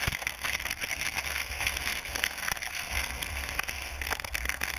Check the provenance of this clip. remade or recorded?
remade